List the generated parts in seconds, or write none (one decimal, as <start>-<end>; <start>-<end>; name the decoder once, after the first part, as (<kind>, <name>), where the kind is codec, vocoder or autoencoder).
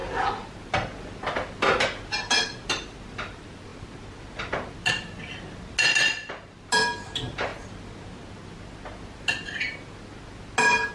none